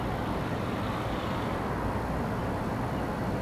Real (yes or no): yes